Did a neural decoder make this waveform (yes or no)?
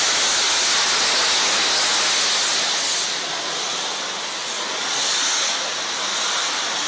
no